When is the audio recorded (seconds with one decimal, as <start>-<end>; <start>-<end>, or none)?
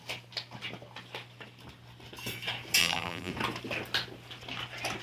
0.0-2.8; 3.3-5.0